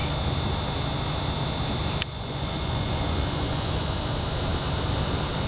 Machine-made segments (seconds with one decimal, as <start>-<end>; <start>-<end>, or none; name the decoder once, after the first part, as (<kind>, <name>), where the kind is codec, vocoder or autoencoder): 2.1-3.9 (vocoder, Vocos)